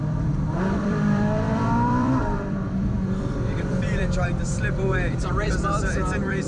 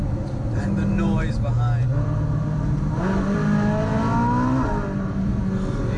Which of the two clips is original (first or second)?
second